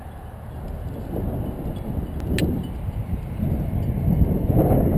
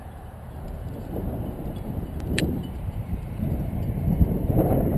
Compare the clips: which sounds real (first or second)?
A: first